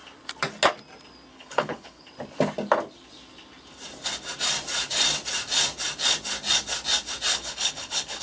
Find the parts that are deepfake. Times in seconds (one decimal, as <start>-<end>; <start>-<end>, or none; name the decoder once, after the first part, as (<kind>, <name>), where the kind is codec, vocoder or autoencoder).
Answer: 1.3-2.1 (codec, HILCodec); 7.3-8.2